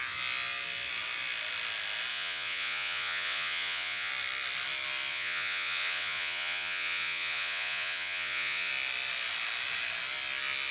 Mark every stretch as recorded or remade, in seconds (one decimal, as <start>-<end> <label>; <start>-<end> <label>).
0.0-2.1 recorded; 2.1-4.1 remade; 4.1-5.1 recorded; 5.1-8.7 remade; 8.7-10.7 recorded